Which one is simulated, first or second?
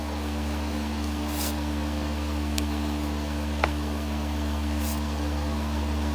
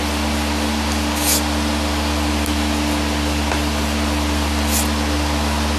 first